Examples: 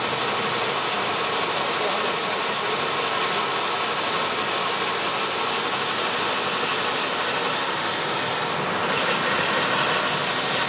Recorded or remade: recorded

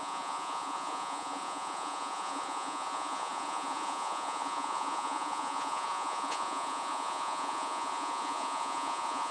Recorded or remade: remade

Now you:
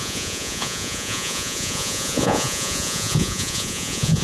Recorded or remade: remade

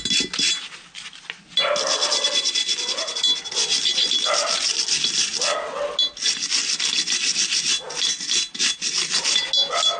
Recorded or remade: recorded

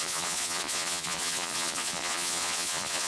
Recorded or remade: remade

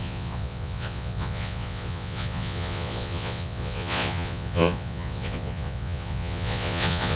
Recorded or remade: remade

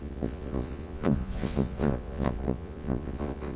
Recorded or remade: remade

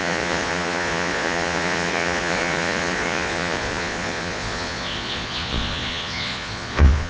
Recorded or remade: remade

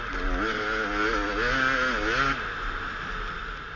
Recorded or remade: recorded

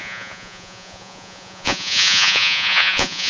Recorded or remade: remade